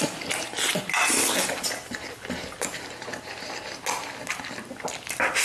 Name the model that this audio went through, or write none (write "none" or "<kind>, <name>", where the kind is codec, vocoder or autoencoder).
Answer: none